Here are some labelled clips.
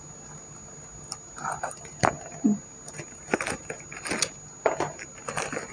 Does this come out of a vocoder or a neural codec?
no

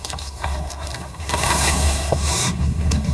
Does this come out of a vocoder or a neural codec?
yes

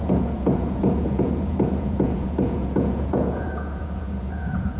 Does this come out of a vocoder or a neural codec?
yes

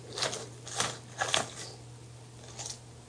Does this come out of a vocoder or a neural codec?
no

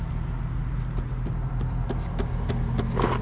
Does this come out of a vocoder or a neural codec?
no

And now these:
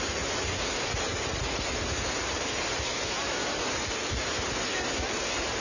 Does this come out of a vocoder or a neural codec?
no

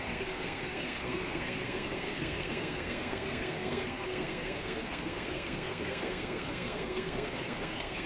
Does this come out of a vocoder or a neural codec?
yes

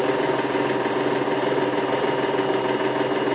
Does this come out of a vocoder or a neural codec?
no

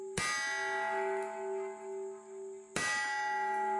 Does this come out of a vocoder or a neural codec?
no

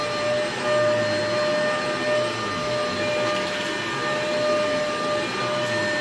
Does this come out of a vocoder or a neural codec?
no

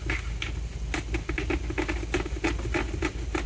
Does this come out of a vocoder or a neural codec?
no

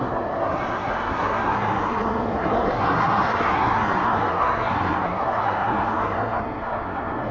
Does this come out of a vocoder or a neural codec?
yes